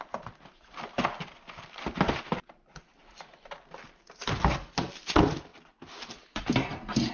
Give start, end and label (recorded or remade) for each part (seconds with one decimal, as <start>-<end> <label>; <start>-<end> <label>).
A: 0.0-7.1 recorded